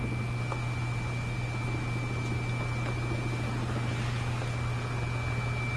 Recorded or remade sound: recorded